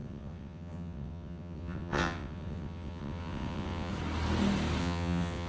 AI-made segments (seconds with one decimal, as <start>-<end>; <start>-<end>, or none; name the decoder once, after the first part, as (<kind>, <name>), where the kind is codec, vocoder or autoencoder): 0.0-3.9 (vocoder, WaveNeXt); 4.8-5.5